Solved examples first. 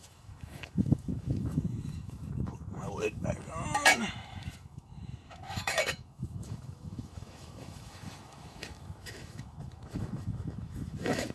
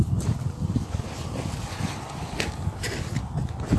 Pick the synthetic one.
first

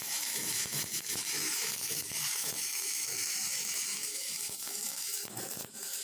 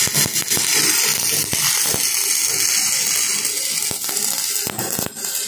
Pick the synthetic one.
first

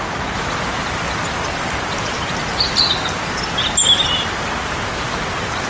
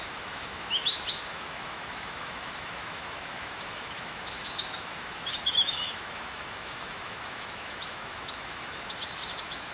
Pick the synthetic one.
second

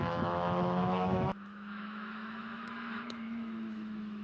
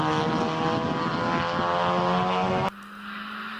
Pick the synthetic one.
first